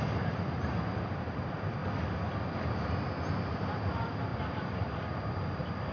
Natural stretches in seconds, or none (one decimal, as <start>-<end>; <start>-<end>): 0.0-4.3